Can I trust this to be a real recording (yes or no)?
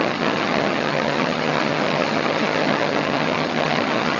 no